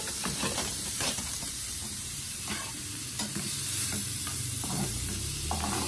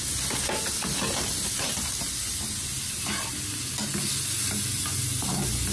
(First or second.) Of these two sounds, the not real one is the first